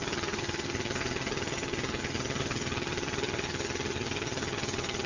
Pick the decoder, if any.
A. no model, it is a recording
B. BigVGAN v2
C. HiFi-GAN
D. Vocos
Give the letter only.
C